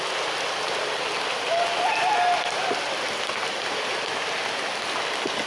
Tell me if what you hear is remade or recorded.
recorded